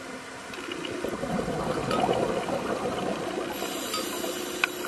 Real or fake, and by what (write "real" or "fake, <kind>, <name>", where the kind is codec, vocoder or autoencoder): real